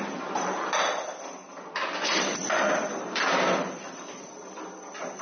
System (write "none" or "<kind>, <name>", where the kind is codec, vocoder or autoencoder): none